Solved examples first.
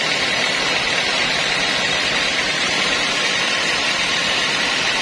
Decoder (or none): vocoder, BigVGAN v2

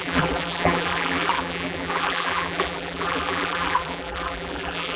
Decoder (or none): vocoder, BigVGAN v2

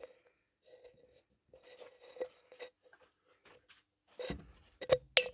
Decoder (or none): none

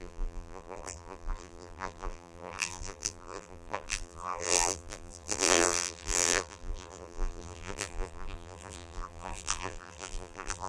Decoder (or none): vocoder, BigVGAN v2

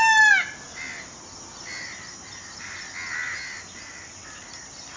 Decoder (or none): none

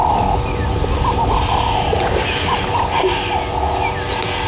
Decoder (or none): none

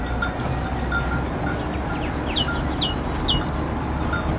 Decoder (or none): none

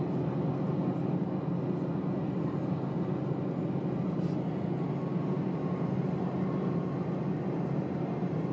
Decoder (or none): none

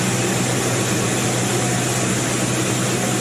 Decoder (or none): none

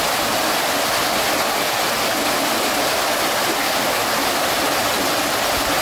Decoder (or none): none